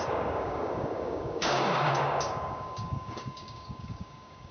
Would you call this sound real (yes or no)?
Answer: no